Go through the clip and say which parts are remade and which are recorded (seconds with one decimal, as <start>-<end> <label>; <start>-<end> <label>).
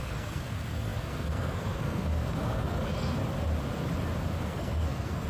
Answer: 0.0-3.2 remade; 3.2-4.4 recorded; 4.4-5.3 remade